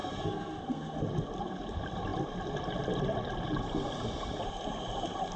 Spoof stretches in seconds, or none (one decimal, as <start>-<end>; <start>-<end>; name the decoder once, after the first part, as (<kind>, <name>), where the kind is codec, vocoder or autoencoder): 0.0-1.0 (codec, SNAC)